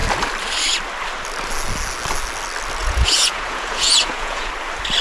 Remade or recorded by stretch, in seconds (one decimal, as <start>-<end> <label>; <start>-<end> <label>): 0.0-2.8 recorded; 2.8-4.5 remade; 4.5-5.0 recorded